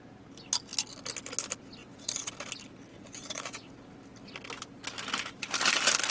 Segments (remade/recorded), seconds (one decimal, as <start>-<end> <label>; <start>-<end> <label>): 0.0-1.8 recorded; 1.8-2.3 remade; 2.3-2.9 recorded; 2.9-3.7 remade; 3.7-6.1 recorded